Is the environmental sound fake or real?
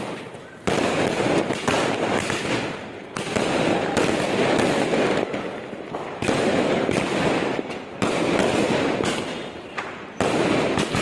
fake